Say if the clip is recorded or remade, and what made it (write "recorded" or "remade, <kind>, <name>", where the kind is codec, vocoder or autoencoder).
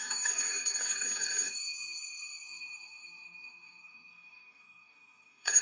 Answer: remade, codec, DAC